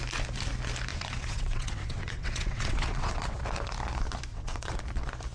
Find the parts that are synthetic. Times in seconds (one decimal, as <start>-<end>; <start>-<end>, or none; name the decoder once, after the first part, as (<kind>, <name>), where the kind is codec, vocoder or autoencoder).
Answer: 0.9-3.4 (vocoder, WaveNeXt); 4.3-4.8